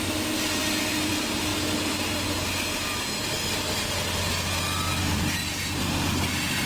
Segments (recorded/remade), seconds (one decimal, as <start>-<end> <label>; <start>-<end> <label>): 0.0-6.7 recorded